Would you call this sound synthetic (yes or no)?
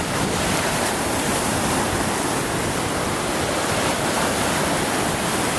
no